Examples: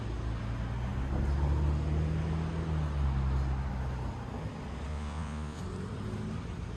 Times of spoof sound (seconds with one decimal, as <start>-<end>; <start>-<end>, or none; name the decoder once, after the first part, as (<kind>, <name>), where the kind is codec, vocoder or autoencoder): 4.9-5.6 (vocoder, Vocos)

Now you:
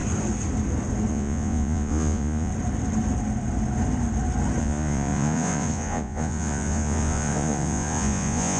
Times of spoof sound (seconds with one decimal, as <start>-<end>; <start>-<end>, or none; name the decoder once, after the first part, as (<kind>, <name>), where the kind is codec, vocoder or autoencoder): 1.1-2.5 (vocoder, Vocos); 4.6-8.6

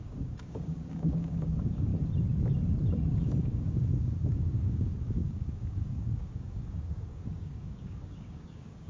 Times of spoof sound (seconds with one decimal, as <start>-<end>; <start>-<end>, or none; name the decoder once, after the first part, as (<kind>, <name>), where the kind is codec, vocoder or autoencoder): 0.0-1.9 (codec, DAC); 3.2-8.9

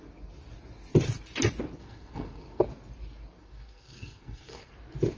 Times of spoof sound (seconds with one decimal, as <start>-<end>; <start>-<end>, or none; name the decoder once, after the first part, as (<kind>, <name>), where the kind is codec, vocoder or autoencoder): 1.8-2.6 (codec, SNAC); 3.4-4.7

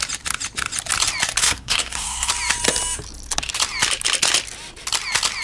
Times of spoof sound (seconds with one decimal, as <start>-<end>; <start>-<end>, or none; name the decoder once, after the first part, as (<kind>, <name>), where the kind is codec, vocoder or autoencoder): 1.4-2.3 (codec, SNAC)

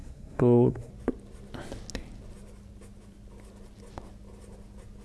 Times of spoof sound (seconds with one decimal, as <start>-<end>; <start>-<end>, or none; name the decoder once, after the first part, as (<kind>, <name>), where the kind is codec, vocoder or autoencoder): 0.0-0.9 (codec, SNAC)

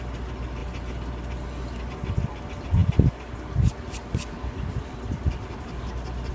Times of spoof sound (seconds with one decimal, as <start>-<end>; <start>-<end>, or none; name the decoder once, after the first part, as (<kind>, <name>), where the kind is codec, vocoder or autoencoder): none

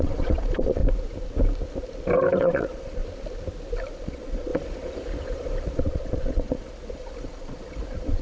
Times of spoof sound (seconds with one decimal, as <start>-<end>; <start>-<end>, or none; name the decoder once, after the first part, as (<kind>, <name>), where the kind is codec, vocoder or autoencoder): 0.0-0.8 (vocoder, Vocos); 2.4-3.0; 4.0-8.2